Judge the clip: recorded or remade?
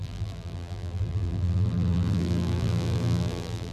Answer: remade